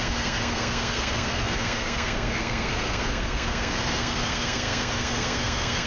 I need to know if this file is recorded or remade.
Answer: remade